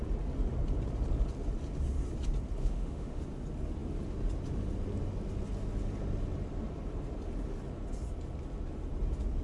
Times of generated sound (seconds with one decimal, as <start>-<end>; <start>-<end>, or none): 2.6-3.2